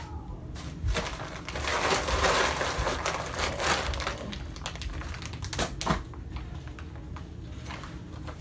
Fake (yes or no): no